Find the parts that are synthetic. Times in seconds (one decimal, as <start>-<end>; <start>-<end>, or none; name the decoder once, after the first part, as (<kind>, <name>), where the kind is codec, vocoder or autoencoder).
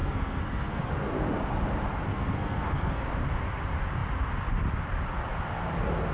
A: 0.0-0.9 (codec, SNAC); 2.1-3.0